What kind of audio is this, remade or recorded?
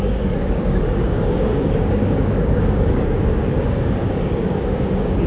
remade